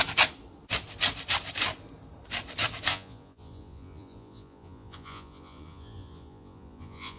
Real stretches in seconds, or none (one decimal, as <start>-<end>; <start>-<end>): 0.0-2.9

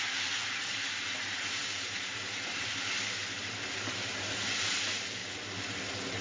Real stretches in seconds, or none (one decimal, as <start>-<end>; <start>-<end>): 5.2-6.2